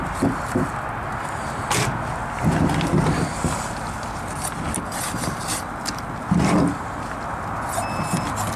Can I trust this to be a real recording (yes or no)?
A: yes